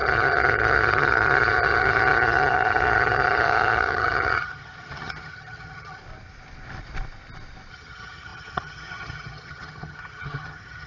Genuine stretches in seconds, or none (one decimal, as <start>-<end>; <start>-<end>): 6.0-7.7